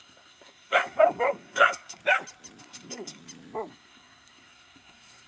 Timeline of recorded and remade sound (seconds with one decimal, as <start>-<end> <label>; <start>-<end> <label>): 0.0-2.0 remade; 2.0-2.6 recorded; 2.6-3.2 remade; 3.2-3.7 recorded; 3.7-5.3 remade